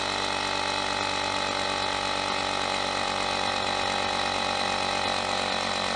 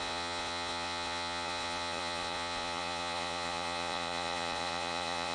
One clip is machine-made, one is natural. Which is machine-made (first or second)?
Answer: second